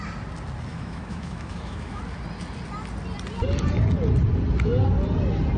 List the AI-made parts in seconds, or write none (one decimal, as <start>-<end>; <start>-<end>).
0.7-2.0